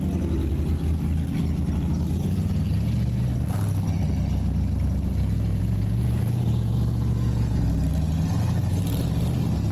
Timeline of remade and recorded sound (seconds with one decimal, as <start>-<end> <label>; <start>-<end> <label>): 0.0-5.5 recorded; 5.5-7.6 remade; 7.6-9.7 recorded